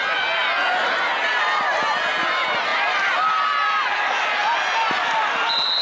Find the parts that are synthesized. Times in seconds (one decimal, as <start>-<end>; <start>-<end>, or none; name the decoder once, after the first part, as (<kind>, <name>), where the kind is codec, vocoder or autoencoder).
none